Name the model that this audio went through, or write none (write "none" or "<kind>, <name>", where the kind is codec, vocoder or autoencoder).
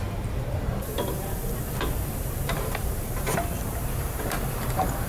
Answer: vocoder, BigVGAN v2